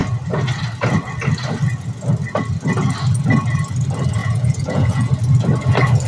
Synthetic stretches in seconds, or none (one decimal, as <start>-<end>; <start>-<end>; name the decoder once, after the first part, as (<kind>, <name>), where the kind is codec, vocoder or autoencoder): 4.2-5.1 (vocoder, Vocos)